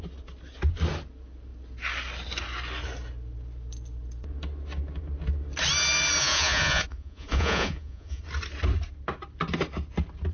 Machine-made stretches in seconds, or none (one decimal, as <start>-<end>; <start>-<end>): 6.2-8.2